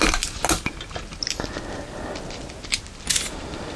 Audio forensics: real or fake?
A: real